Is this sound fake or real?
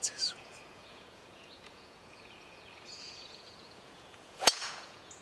fake